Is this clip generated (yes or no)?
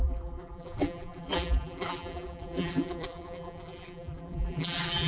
yes